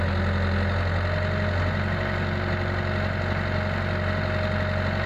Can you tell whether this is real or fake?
real